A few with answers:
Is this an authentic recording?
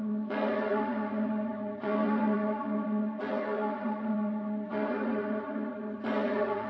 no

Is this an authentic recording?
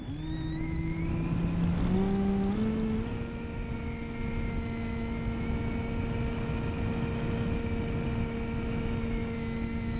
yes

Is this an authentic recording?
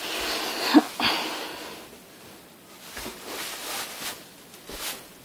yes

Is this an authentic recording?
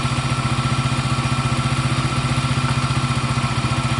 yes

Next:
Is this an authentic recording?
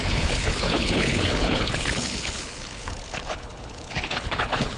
no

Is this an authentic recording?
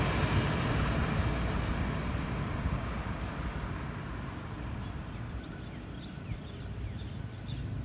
yes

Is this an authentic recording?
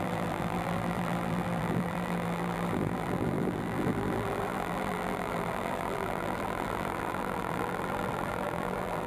no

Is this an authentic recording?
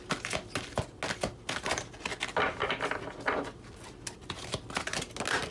yes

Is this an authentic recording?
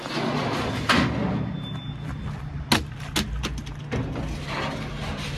yes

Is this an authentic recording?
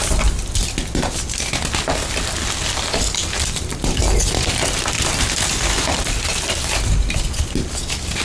yes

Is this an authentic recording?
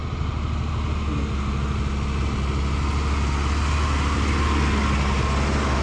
yes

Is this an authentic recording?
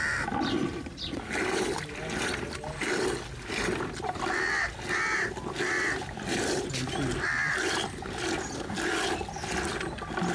yes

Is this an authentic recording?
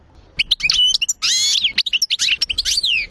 yes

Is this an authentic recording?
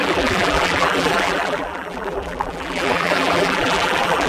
no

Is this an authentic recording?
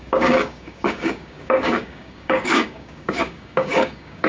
no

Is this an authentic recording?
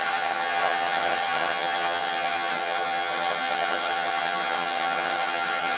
no